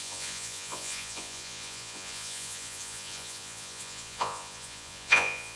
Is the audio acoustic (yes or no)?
no